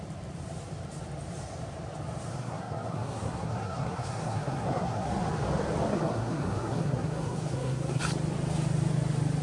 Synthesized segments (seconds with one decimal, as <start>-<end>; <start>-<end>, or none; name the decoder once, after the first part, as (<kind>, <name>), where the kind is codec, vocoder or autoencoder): 2.3-5.1 (codec, SNAC); 5.9-8.0